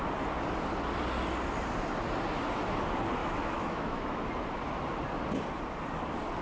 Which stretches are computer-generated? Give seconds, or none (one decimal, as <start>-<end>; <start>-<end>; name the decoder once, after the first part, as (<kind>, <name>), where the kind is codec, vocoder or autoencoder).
3.2-4.2 (autoencoder, DAC-VAE)